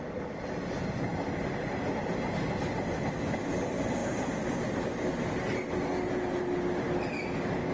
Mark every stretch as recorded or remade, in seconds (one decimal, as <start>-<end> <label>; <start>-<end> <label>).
0.0-7.7 recorded